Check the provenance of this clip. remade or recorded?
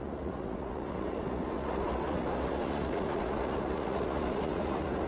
remade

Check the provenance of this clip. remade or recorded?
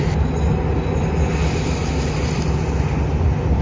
recorded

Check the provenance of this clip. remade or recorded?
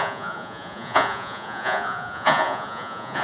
remade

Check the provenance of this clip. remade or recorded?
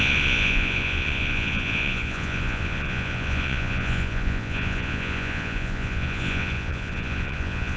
remade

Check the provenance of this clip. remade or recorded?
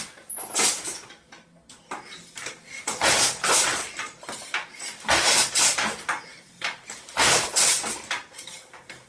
recorded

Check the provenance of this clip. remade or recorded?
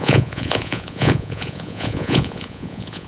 remade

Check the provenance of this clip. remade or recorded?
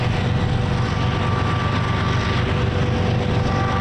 recorded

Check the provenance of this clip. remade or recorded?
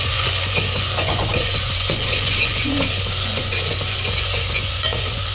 remade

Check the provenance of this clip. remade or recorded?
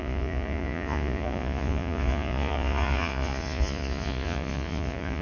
remade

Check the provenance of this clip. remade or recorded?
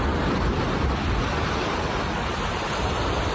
recorded